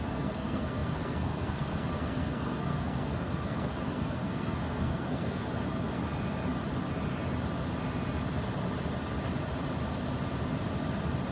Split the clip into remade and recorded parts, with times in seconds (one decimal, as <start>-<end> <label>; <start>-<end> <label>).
0.0-6.0 remade; 6.0-11.3 recorded